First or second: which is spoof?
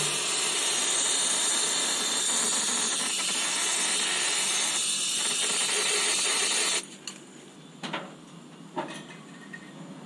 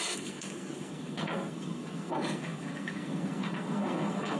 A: second